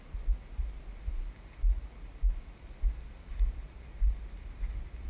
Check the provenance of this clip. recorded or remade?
recorded